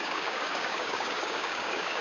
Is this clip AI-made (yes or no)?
yes